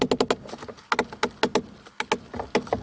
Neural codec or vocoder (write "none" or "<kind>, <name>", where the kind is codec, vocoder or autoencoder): none